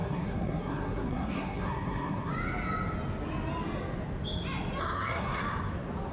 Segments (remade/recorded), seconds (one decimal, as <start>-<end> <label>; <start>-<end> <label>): 0.0-2.3 remade; 2.3-4.8 recorded; 4.8-5.4 remade; 5.4-6.1 recorded